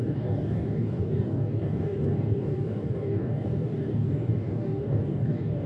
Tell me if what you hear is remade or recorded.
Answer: remade